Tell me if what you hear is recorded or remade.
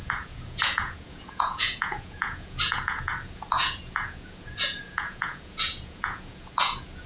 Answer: remade